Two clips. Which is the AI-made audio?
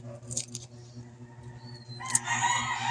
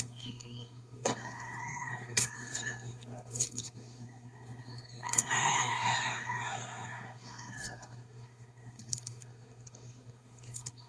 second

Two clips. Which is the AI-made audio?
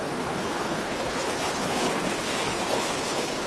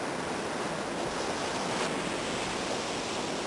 first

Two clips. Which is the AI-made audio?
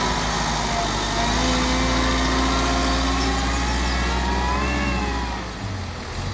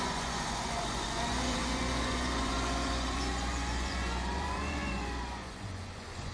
second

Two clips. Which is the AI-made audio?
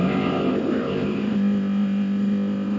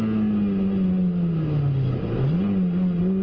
first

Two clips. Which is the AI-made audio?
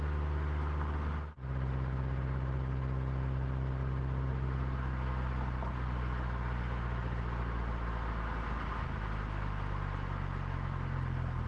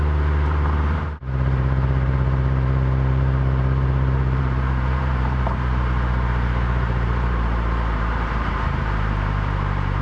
second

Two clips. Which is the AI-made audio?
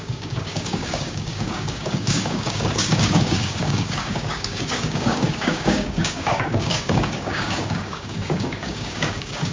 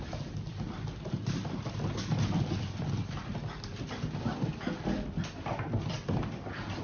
first